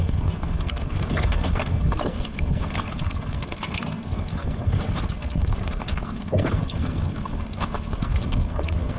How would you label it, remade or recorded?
remade